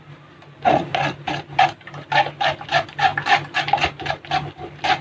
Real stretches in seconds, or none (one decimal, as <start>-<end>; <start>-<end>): 0.9-1.9; 3.1-4.1